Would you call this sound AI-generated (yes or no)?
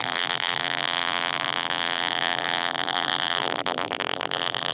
yes